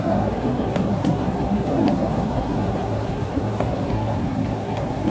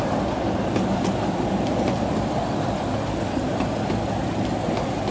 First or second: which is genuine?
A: second